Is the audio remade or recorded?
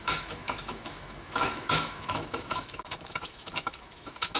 remade